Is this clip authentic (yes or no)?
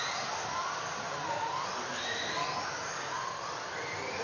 yes